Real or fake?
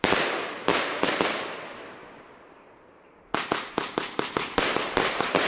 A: real